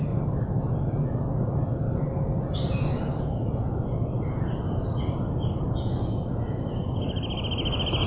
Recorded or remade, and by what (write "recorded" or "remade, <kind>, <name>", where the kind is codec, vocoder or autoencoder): recorded